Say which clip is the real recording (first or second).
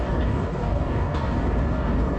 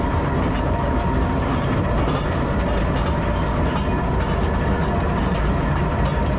second